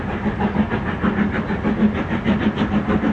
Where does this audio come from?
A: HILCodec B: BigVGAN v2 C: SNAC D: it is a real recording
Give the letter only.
D